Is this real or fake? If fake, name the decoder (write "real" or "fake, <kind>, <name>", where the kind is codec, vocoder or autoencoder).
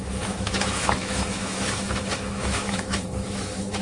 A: fake, autoencoder, DAC-VAE